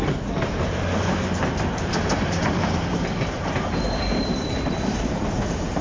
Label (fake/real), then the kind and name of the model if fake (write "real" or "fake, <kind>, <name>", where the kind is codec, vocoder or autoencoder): fake, vocoder, BigVGAN v2